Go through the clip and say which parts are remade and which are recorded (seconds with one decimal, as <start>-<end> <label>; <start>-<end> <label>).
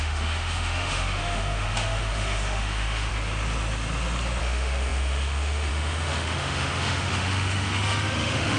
0.0-3.1 remade; 3.1-4.4 recorded; 4.4-8.6 remade